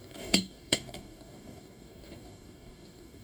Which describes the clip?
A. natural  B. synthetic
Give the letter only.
B